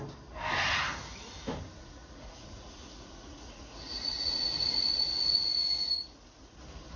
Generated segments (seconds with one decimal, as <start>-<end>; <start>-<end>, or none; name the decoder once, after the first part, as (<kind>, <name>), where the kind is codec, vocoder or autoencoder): 1.8-5.6 (vocoder, Vocos); 6.0-6.6